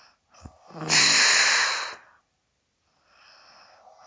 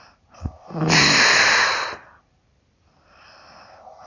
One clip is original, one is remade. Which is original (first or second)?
first